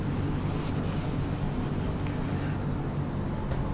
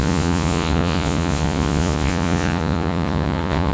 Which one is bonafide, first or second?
first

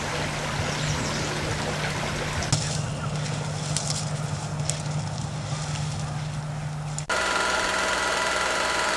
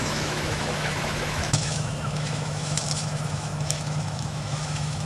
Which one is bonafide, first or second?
first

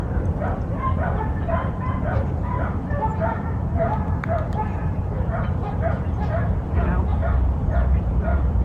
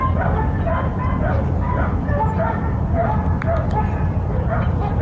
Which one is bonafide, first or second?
second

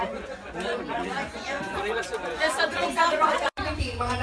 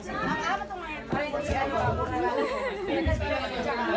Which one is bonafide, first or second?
second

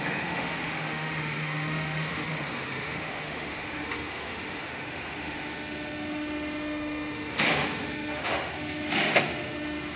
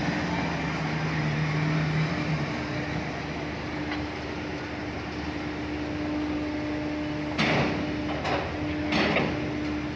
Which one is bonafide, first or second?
second